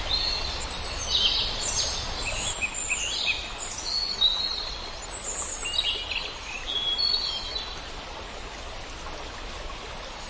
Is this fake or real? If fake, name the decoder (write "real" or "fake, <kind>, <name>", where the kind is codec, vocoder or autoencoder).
real